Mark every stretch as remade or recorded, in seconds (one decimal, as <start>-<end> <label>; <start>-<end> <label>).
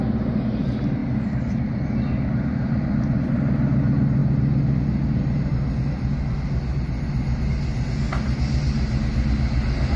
0.0-10.0 recorded